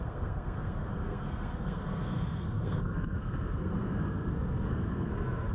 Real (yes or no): no